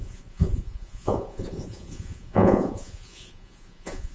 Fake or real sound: fake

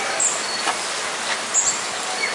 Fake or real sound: real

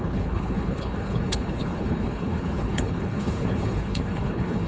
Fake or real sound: fake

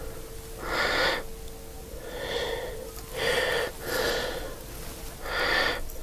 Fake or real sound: real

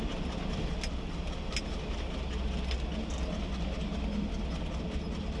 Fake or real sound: real